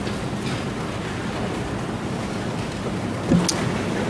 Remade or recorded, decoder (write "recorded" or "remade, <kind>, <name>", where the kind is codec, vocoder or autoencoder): recorded